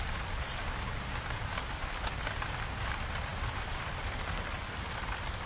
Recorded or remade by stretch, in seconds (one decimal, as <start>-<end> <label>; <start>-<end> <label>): 0.0-1.8 recorded; 1.8-2.7 remade; 2.7-3.3 recorded; 3.3-5.1 remade; 5.1-5.5 recorded